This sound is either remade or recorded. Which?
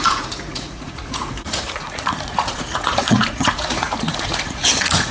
remade